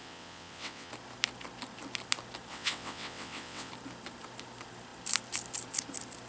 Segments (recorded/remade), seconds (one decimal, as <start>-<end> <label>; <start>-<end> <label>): 0.0-0.9 remade; 0.9-2.5 recorded; 2.5-3.7 remade; 3.7-6.3 recorded